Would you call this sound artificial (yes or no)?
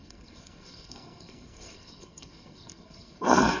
yes